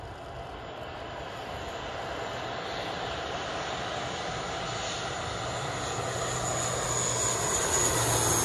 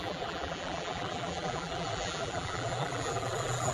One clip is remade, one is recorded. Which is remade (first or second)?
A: second